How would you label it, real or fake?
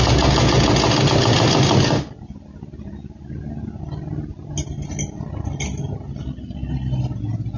real